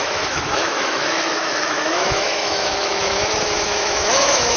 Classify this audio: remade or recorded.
remade